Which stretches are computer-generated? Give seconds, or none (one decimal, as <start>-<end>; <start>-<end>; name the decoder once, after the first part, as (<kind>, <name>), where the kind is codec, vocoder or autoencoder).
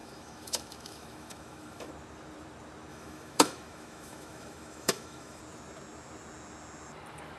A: 0.0-1.9 (autoencoder, DAC-VAE); 2.9-5.4